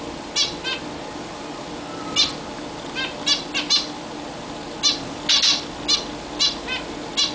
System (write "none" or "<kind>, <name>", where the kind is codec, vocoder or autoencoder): none